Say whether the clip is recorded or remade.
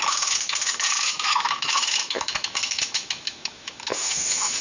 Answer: remade